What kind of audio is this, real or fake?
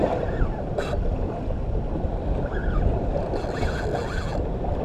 real